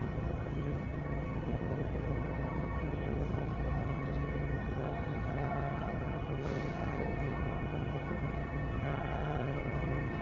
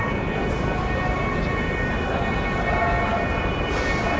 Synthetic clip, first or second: first